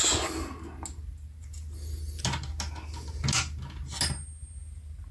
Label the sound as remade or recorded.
recorded